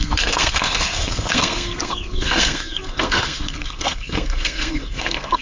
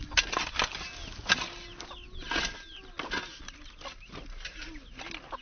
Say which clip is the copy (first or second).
first